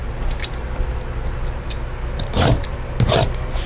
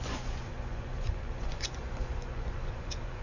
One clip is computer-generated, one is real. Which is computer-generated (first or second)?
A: second